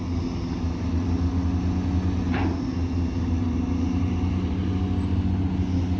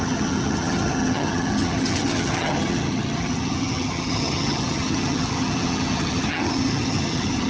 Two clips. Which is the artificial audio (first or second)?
second